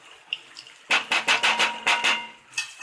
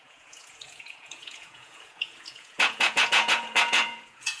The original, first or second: first